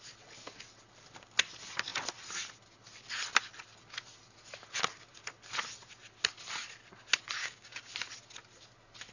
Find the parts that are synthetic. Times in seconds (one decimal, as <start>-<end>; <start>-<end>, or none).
7.4-7.9